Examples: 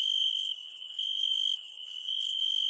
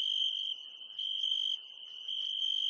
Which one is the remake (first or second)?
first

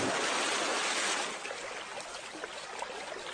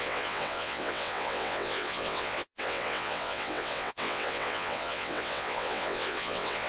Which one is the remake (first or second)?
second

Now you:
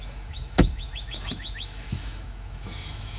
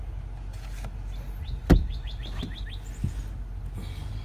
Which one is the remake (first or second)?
first